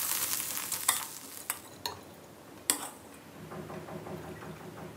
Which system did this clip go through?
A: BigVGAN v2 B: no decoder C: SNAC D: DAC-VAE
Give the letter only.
B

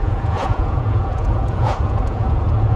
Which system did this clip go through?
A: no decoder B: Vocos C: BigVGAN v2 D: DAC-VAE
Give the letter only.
B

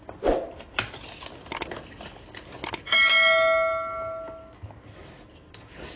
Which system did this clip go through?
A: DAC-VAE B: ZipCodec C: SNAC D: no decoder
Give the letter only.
D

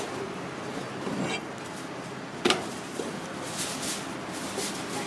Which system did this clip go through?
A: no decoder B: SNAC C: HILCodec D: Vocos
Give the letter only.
A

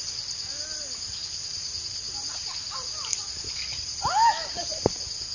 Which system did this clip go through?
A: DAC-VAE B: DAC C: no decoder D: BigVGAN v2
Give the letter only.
C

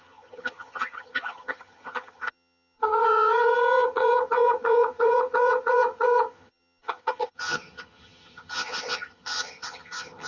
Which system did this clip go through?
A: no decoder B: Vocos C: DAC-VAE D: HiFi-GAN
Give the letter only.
D